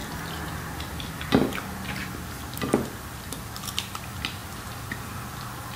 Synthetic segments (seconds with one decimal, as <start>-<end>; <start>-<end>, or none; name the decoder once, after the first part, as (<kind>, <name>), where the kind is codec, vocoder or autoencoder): 0.0-5.8 (vocoder, BigVGAN v2)